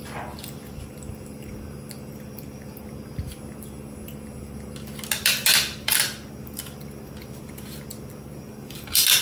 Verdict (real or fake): real